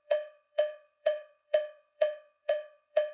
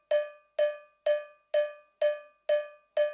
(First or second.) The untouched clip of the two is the second